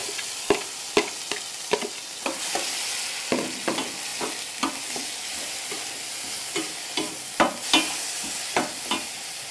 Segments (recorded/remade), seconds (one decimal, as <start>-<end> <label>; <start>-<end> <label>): 0.0-9.5 recorded